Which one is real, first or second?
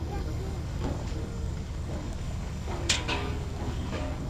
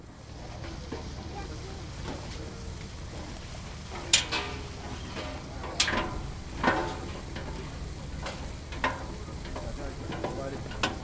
second